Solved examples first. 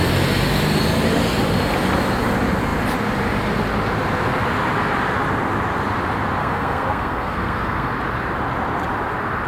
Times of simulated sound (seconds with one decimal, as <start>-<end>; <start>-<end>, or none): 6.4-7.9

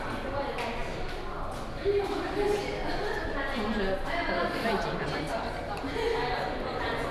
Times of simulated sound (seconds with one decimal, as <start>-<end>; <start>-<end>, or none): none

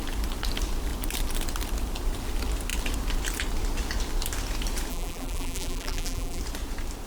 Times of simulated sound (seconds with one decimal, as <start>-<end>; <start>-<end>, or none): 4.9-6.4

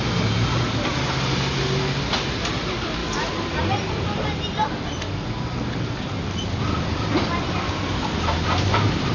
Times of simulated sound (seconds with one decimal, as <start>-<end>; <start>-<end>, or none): none

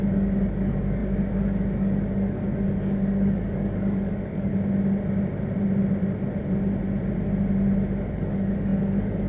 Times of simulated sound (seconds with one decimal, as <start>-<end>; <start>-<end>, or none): 0.0-4.5; 8.1-9.3